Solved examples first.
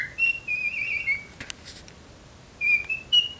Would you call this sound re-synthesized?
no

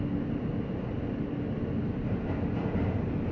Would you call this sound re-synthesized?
no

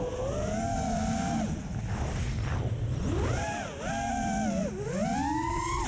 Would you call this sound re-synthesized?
no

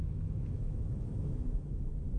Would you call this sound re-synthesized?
yes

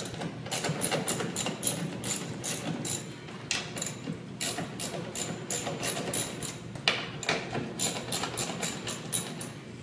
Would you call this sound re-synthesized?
no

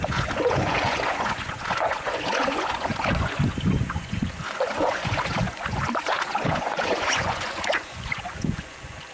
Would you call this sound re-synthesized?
yes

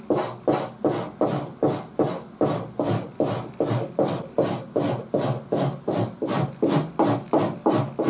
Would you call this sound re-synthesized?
no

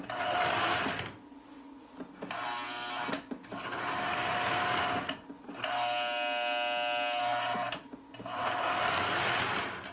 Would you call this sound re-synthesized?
no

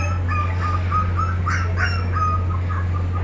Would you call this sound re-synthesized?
no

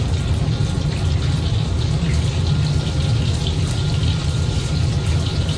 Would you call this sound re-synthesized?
no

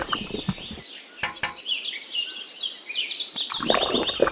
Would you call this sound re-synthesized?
no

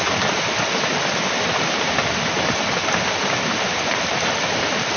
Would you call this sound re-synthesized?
yes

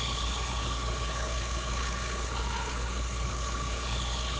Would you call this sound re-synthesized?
yes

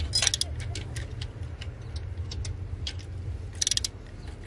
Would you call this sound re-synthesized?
no